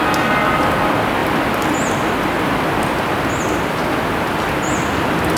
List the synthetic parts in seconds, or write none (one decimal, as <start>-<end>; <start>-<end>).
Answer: none

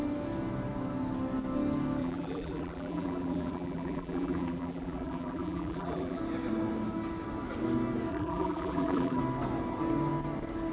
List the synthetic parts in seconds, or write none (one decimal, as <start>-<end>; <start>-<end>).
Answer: 2.0-6.2; 8.1-9.2

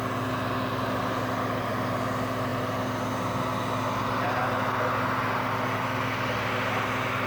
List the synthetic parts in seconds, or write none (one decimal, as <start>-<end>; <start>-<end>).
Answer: none